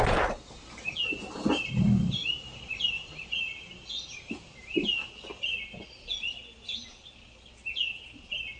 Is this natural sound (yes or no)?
yes